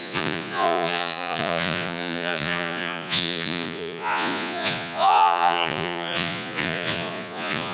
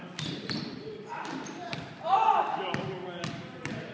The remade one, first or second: first